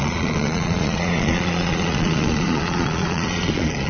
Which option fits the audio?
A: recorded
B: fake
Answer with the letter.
B